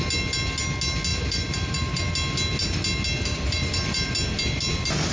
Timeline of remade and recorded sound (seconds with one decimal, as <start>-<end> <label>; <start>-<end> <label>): 0.0-1.1 recorded; 1.1-2.1 remade; 2.1-3.3 recorded; 3.3-4.1 remade; 4.1-5.1 recorded